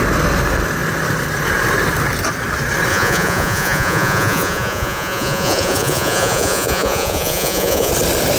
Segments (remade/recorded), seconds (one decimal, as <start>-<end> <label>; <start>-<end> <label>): 0.0-2.9 recorded; 2.9-7.9 remade; 7.9-8.4 recorded